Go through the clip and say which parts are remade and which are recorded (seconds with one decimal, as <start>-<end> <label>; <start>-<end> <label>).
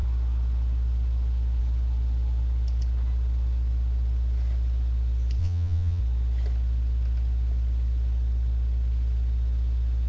0.0-5.4 recorded; 5.4-6.0 remade; 6.0-10.1 recorded